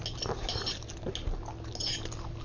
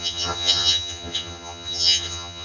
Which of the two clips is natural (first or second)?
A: first